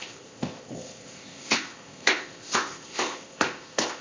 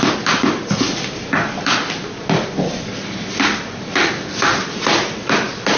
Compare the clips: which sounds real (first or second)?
second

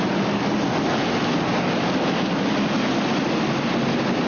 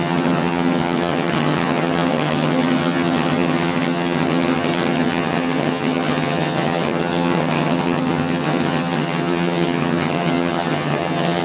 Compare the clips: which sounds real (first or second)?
first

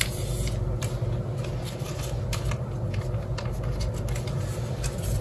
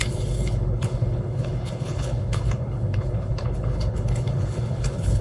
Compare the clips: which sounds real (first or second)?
first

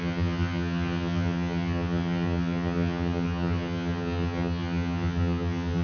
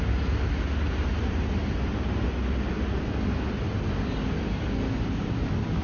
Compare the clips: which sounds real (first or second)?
second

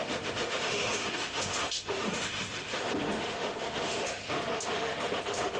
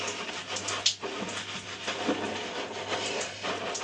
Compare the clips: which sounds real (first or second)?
second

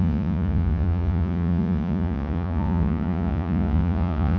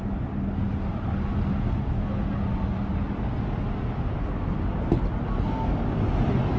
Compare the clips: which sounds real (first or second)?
second